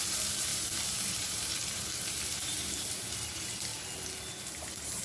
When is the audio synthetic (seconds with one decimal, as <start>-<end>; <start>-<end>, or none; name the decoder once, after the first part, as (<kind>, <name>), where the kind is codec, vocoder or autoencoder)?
0.0-3.7 (vocoder, BigVGAN v2); 4.5-5.0